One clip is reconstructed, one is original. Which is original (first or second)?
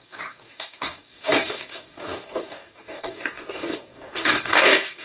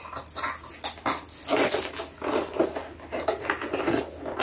second